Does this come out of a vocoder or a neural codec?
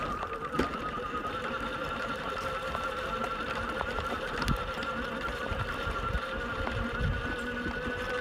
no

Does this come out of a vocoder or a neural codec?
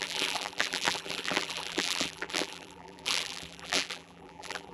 yes